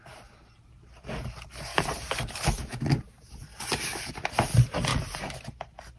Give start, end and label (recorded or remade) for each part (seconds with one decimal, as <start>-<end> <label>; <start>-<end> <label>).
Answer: 0.0-1.7 recorded; 1.7-2.3 remade; 2.3-4.9 recorded; 4.9-5.4 remade; 5.4-6.0 recorded